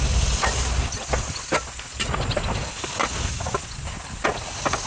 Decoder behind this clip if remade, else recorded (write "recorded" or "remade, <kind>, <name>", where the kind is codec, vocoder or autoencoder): recorded